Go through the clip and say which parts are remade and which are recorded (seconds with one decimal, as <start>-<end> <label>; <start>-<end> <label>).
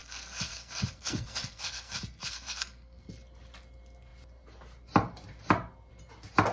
0.0-3.1 remade; 3.1-6.5 recorded